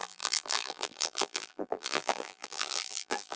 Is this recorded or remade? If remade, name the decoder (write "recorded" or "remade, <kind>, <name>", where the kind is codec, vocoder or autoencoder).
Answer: remade, vocoder, BigVGAN v2